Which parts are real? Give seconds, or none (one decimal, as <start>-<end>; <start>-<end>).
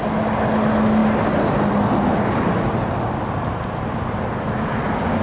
0.0-5.2